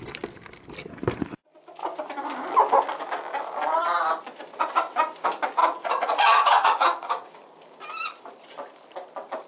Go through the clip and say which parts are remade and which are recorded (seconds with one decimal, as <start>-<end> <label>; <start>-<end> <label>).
0.0-5.6 recorded; 5.6-7.3 remade; 7.3-9.5 recorded